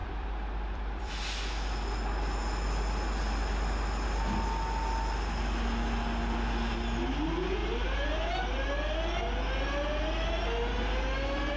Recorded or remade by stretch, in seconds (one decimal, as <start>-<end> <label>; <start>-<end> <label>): 0.0-1.1 remade; 1.1-11.6 recorded